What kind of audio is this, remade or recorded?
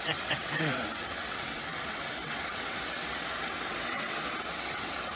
remade